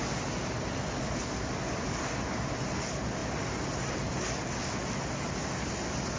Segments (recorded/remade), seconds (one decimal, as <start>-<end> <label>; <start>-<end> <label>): 0.0-6.2 recorded